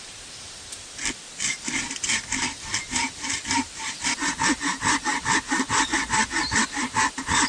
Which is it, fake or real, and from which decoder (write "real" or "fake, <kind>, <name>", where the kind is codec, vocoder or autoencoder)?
real